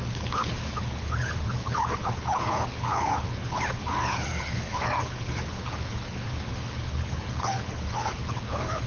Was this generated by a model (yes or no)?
yes